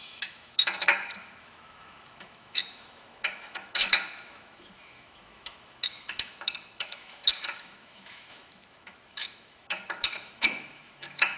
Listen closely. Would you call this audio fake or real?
fake